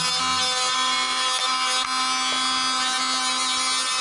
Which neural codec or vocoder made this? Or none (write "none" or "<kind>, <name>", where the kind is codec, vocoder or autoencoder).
none